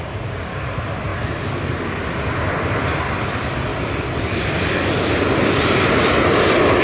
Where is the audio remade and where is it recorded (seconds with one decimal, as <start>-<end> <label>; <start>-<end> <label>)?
0.0-1.1 remade; 1.1-2.9 recorded; 2.9-3.7 remade; 3.7-4.2 recorded; 4.2-6.8 remade